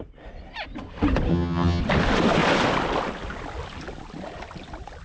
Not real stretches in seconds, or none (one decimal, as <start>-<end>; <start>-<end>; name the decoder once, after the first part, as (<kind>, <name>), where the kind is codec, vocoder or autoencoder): 1.3-1.8 (vocoder, HiFi-GAN)

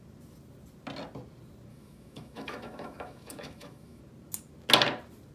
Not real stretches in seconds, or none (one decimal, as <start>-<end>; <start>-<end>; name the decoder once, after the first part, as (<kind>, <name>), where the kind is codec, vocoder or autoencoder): 1.7-4.0 (autoencoder, DAC-VAE)

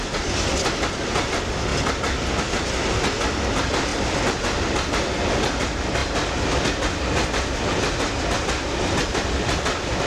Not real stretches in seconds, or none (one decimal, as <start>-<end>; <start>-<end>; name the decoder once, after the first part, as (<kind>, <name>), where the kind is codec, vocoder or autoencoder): 3.9-4.6 (vocoder, BigVGAN v2)

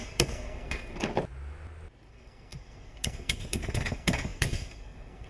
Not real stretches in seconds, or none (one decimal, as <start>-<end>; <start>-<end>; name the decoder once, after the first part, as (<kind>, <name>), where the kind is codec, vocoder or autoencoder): 0.0-1.1 (codec, SNAC); 2.1-5.3

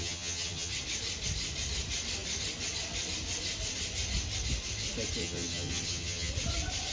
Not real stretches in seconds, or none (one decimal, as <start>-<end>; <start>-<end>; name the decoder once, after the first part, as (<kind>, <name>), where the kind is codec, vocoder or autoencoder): 0.0-0.7 (vocoder, HiFi-GAN); 5.2-6.3